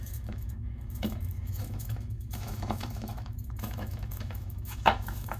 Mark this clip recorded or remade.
remade